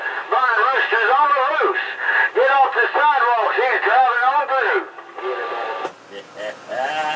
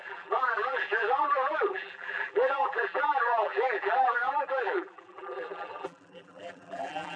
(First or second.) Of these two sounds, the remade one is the second